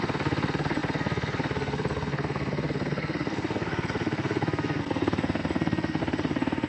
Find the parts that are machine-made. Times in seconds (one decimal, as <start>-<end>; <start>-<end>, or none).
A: 0.0-6.7